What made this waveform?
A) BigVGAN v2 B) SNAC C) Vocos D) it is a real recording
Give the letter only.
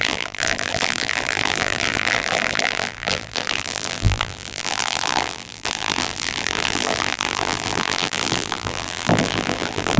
A